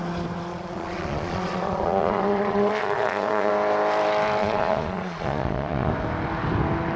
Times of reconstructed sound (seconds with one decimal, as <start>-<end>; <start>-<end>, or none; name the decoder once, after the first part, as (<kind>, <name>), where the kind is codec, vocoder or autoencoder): 0.5-3.5 (vocoder, Vocos); 4.4-5.9